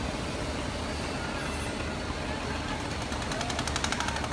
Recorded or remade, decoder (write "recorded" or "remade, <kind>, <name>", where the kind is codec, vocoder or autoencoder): recorded